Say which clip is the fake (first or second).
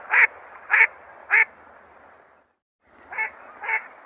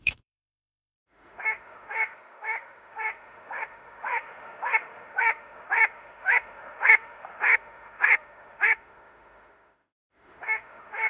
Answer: second